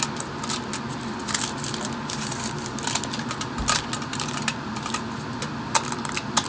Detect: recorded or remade recorded